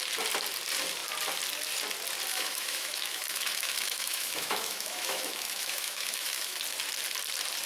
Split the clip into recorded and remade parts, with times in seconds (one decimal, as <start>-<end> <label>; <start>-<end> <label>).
0.0-2.3 recorded; 2.3-6.6 remade; 6.6-7.7 recorded